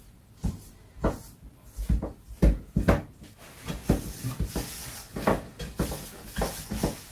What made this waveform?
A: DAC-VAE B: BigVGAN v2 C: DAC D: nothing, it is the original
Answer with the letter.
D